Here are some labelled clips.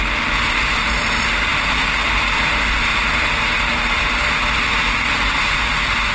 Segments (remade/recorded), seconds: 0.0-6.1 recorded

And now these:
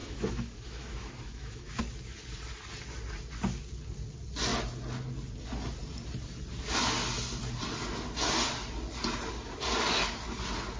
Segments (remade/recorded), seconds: 0.0-1.8 remade; 1.8-10.8 recorded